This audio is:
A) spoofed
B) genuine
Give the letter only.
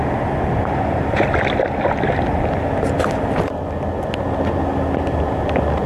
B